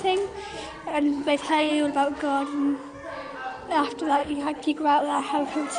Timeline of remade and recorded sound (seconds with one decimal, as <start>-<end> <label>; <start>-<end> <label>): 0.0-0.9 recorded; 0.9-1.7 remade; 1.7-4.2 recorded; 4.2-5.0 remade; 5.0-5.8 recorded